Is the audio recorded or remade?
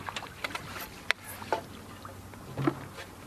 recorded